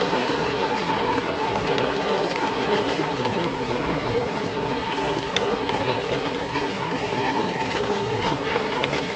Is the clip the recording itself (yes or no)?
no